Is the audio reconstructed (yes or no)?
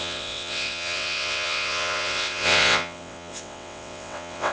yes